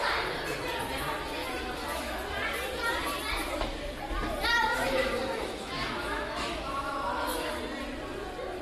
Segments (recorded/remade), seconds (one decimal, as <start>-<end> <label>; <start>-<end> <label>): 0.0-1.4 recorded; 1.4-2.1 remade; 2.1-4.7 recorded; 4.7-7.6 remade; 7.6-8.6 recorded